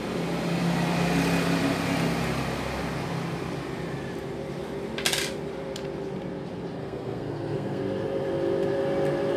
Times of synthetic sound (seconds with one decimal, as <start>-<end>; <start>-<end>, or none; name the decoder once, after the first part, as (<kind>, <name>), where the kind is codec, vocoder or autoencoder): 6.8-7.8 (codec, SNAC)